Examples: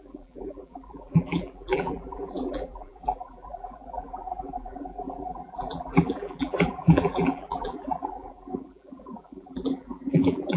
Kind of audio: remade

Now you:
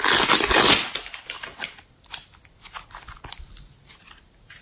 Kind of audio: recorded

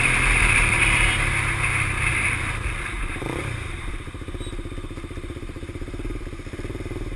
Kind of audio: remade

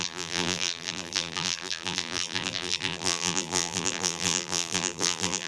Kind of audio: remade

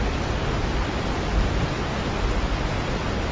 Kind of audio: recorded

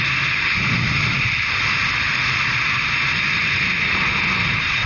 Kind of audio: recorded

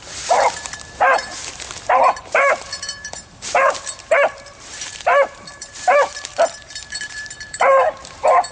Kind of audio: remade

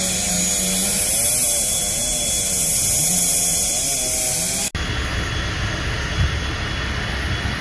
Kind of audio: recorded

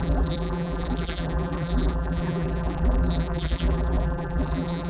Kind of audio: remade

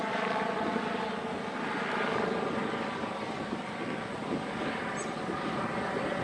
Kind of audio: recorded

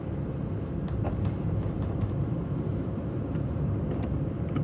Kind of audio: remade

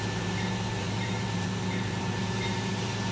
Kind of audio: remade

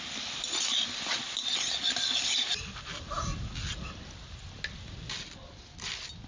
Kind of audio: recorded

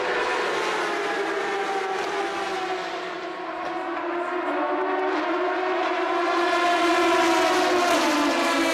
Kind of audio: recorded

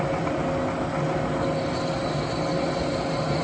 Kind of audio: recorded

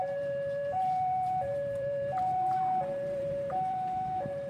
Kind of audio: remade